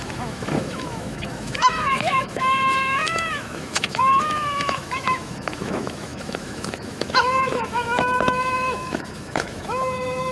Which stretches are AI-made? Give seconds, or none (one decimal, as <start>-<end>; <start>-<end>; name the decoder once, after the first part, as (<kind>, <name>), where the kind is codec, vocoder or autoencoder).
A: 0.0-10.3 (autoencoder, DAC-VAE)